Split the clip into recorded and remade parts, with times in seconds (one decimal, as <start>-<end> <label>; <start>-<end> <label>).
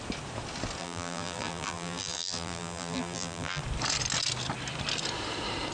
0.0-0.8 recorded; 0.8-3.6 remade; 3.6-5.7 recorded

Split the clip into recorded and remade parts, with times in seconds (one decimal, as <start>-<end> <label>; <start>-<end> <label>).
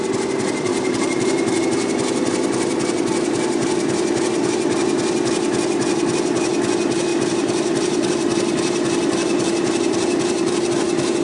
0.0-0.7 recorded; 0.7-1.6 remade; 1.6-7.1 recorded; 7.1-10.7 remade; 10.7-11.2 recorded